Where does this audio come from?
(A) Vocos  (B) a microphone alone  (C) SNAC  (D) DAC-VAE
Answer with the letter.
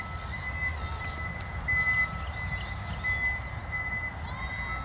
B